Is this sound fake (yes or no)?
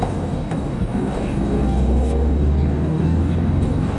yes